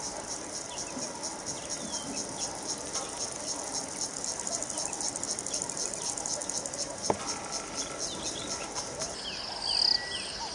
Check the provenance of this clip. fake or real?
real